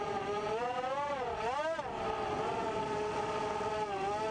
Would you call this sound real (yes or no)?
yes